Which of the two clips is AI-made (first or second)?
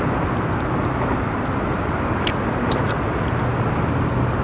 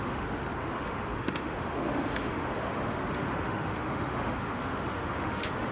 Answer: second